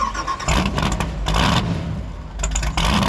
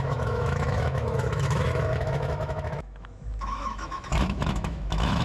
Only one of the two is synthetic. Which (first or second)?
second